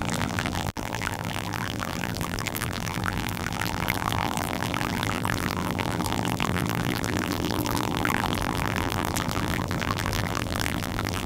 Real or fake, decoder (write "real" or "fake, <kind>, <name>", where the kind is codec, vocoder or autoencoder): fake, vocoder, BigVGAN v2